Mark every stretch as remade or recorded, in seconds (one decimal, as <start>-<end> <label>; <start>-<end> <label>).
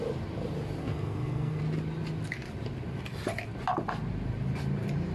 0.0-0.8 recorded; 0.8-1.6 remade; 1.6-5.1 recorded